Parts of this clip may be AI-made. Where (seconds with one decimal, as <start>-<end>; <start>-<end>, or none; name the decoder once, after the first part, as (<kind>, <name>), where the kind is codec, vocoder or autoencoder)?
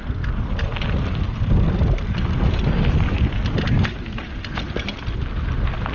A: none